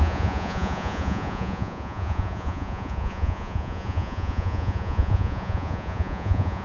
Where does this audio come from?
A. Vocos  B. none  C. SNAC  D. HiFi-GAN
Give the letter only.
A